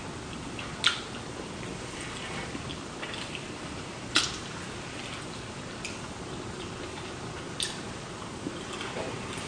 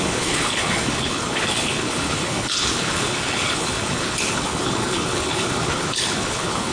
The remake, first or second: second